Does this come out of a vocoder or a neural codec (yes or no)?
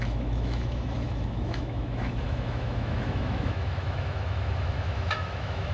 yes